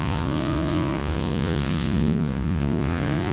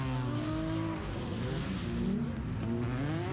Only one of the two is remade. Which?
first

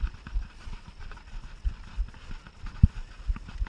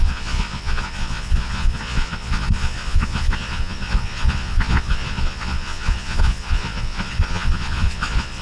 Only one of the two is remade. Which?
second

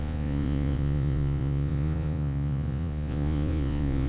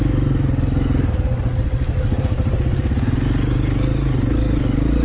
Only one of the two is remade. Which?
first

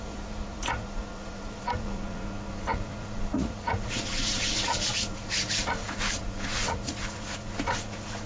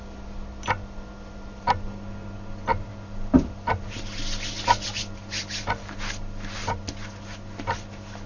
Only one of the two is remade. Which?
first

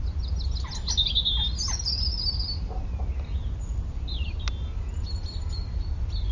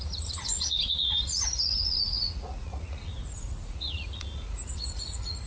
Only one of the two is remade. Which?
second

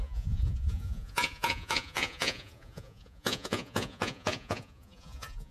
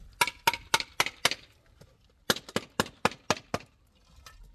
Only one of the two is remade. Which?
first